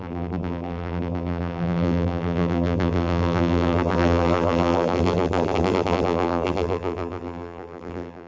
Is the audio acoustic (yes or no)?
no